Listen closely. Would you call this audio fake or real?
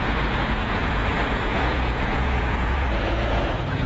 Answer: fake